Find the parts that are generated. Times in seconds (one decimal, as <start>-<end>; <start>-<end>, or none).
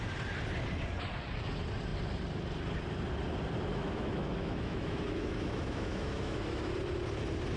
3.7-6.7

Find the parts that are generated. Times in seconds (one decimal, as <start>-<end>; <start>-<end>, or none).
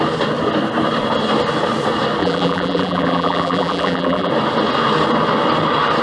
2.2-4.3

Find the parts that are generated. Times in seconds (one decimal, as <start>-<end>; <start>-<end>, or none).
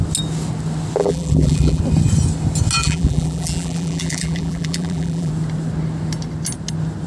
1.0-1.8; 2.8-5.3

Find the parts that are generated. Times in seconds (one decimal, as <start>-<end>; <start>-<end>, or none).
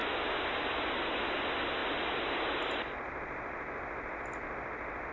none